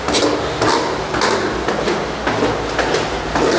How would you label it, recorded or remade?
recorded